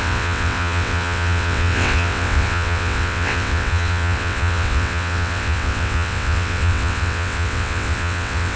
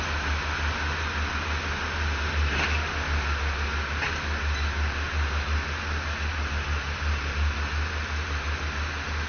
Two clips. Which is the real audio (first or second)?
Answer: second